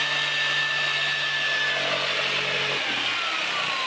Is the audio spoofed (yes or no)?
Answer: no